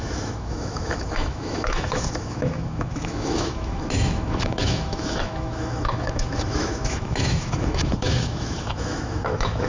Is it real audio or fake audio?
fake